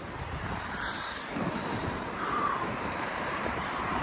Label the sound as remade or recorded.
remade